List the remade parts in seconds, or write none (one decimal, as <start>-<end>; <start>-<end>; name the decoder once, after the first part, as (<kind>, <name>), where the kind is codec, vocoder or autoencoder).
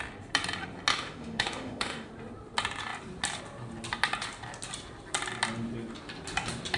0.9-2.1 (autoencoder, DAC-VAE)